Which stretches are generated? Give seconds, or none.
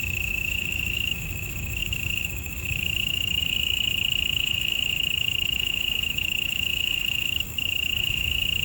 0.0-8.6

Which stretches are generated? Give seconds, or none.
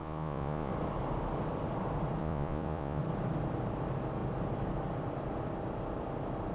0.0-0.7; 2.2-3.0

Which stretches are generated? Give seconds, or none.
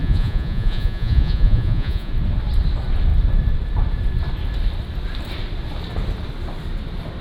0.0-2.1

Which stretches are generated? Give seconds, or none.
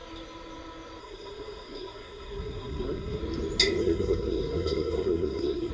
1.0-3.2; 3.8-5.7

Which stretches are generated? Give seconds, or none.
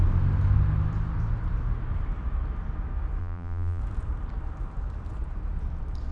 3.2-3.8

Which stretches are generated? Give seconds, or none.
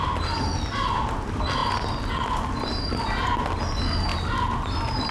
none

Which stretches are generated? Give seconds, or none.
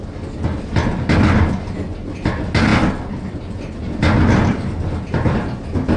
none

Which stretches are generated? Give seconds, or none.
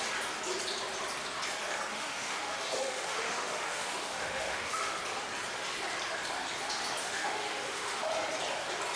1.9-5.0; 7.0-8.1